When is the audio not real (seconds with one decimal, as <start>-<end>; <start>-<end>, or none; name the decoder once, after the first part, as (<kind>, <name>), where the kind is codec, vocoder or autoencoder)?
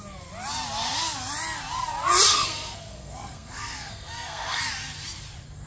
2.3-4.6 (codec, SNAC)